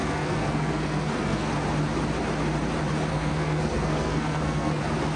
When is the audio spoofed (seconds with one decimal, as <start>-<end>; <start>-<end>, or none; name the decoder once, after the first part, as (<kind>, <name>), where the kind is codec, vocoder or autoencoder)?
0.0-1.5 (codec, SNAC); 3.1-4.8